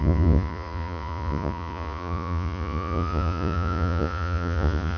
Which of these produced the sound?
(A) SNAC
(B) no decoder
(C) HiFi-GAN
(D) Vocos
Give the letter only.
D